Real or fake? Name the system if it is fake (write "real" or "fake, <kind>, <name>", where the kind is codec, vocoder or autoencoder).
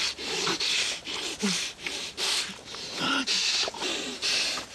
fake, vocoder, BigVGAN v2